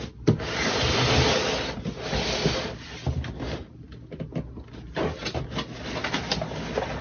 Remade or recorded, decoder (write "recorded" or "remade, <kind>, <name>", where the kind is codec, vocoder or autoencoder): recorded